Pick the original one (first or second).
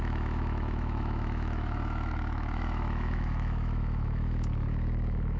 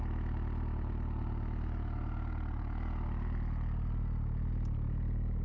second